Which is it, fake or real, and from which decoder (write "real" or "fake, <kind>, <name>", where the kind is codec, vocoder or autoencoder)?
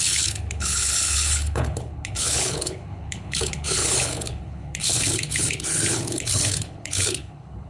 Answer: fake, codec, HILCodec